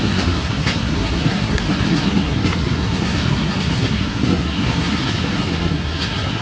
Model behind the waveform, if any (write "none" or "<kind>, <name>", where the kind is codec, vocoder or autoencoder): codec, SNAC